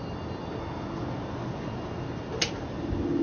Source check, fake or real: real